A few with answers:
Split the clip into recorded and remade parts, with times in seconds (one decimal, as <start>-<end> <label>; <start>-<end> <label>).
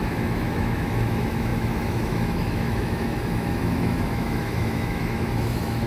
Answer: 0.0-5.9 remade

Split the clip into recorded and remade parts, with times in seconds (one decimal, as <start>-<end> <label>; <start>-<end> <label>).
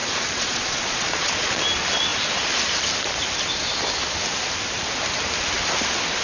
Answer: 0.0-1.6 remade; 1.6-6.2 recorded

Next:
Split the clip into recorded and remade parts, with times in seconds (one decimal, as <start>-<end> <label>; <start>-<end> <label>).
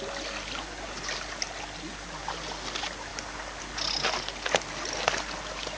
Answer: 0.0-5.8 recorded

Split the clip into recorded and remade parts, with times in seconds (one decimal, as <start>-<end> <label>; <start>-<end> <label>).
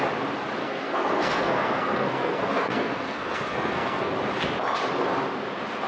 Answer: 0.0-0.6 recorded; 0.6-4.1 remade; 4.1-5.9 recorded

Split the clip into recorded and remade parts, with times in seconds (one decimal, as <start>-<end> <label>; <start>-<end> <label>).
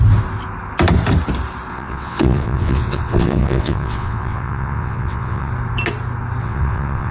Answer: 0.0-1.7 recorded; 1.7-5.5 remade; 5.5-6.4 recorded; 6.4-7.1 remade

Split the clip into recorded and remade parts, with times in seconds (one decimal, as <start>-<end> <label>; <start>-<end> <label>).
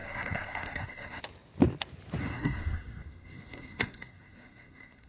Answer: 0.0-1.2 remade; 1.2-2.2 recorded; 2.2-5.1 remade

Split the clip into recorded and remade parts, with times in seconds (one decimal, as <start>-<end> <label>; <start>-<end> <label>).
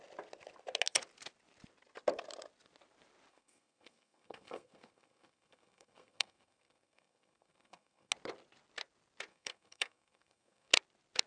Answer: 0.0-3.3 recorded; 3.3-8.1 remade; 8.1-9.3 recorded; 9.3-10.7 remade; 10.7-11.3 recorded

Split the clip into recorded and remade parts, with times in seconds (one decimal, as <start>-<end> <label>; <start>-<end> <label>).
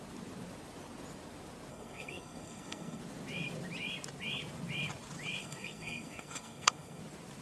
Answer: 0.0-1.7 recorded; 1.7-3.0 remade; 3.0-5.4 recorded; 5.4-7.0 remade; 7.0-7.4 recorded